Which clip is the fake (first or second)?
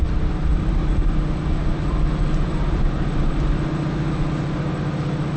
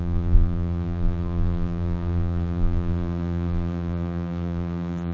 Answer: second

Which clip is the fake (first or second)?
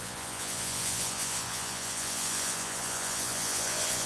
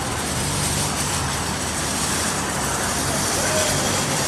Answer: first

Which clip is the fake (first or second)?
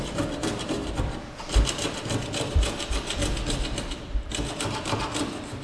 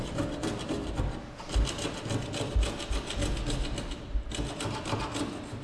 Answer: first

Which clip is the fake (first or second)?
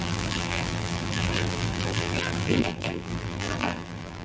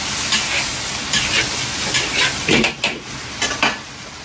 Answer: first